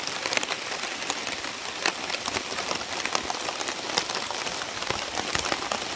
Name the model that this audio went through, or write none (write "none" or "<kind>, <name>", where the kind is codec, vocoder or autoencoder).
none